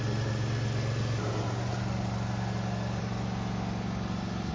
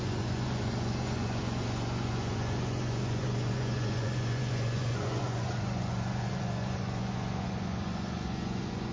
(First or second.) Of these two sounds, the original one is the first